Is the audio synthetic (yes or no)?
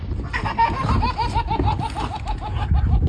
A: no